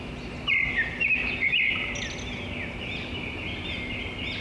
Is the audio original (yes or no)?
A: yes